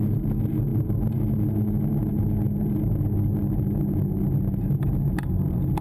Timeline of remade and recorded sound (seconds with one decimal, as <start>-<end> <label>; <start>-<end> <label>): 0.0-5.8 recorded